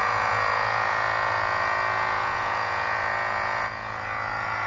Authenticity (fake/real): fake